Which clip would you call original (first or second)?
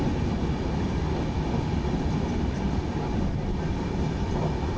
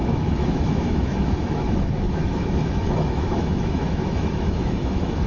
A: first